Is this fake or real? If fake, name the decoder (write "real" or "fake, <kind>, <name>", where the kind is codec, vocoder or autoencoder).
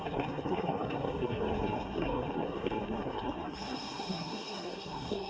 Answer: fake, codec, SNAC